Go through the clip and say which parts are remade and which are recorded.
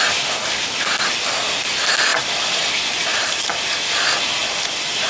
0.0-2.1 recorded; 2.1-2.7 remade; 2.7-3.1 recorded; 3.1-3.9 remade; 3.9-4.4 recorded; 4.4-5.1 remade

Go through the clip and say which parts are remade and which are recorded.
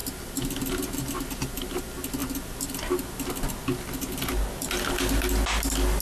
0.0-1.2 remade; 1.2-6.0 recorded